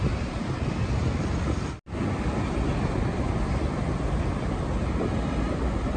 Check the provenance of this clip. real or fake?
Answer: real